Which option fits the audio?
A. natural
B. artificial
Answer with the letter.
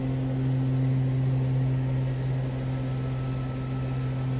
A